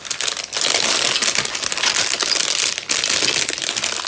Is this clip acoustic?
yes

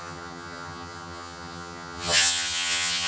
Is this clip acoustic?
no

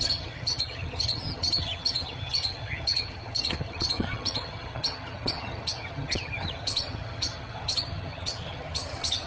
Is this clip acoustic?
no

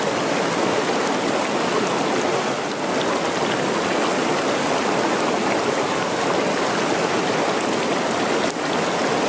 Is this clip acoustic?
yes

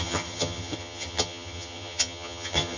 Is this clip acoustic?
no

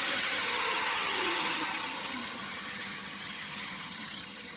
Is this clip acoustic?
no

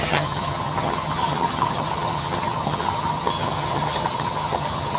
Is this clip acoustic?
no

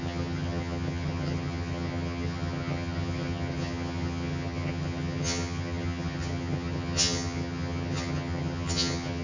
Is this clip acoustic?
no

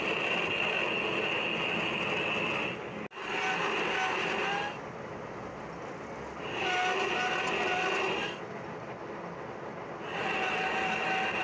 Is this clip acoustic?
yes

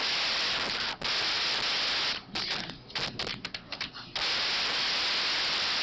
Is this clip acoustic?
yes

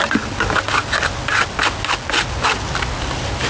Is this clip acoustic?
yes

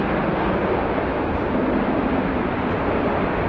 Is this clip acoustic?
yes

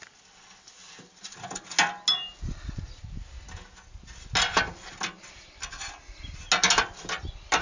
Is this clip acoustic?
yes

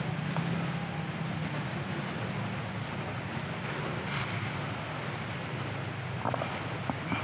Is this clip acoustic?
yes